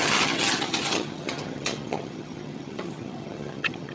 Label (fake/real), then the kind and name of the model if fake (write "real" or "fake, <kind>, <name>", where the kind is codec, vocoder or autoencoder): fake, vocoder, HiFi-GAN